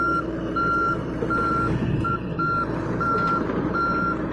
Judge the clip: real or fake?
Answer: fake